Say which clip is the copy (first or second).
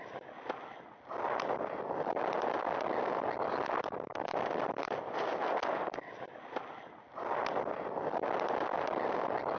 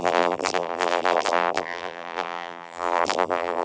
second